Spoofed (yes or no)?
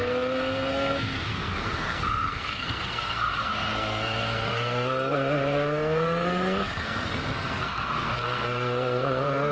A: yes